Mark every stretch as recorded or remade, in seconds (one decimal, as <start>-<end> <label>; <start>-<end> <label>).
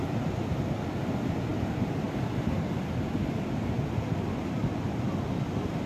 0.0-5.9 recorded